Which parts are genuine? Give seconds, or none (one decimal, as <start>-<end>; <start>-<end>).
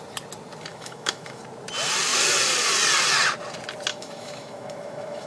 0.0-0.7; 1.4-3.9